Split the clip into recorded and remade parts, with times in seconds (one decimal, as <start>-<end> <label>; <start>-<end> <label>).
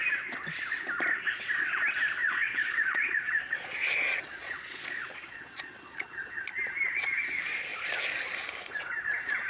0.0-2.2 recorded; 2.2-6.3 remade; 6.3-9.5 recorded